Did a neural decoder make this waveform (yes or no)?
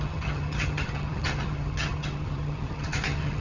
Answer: yes